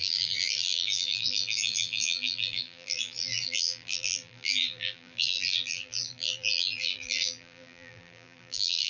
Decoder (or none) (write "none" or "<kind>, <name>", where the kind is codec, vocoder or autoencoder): vocoder, BigVGAN v2